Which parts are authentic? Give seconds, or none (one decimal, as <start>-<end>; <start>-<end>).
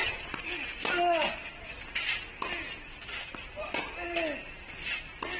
0.0-5.4